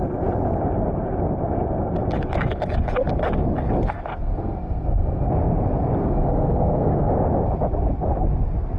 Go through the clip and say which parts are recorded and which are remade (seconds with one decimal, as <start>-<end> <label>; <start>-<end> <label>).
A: 0.0-4.1 recorded; 4.1-5.3 remade; 5.3-6.0 recorded; 6.0-7.1 remade; 7.1-8.8 recorded